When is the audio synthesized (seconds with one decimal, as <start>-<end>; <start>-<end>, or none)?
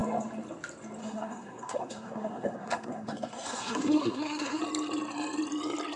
1.0-4.6